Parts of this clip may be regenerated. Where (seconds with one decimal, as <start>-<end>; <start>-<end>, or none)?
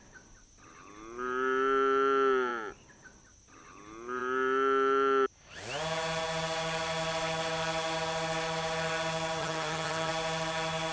9.4-10.1